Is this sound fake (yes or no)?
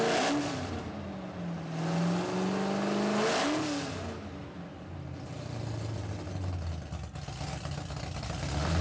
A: no